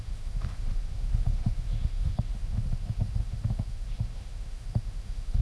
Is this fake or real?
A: fake